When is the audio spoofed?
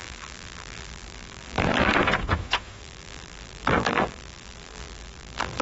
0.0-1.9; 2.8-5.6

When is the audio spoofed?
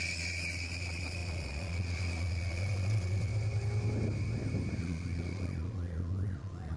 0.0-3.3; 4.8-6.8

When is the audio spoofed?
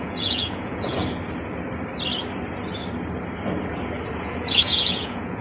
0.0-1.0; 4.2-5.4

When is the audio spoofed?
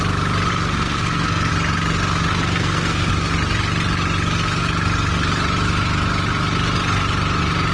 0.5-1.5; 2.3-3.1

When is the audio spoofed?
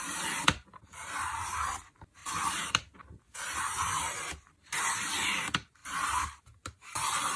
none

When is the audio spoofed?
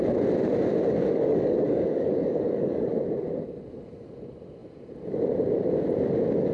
0.9-3.0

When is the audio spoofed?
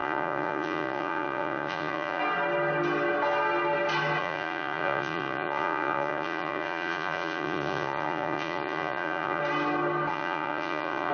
0.0-2.2; 4.2-9.4; 10.1-11.1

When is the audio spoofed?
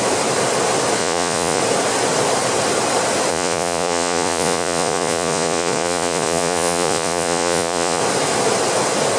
1.0-1.6; 3.3-8.0